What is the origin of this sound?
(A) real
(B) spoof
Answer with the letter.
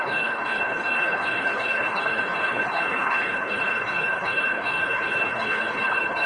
B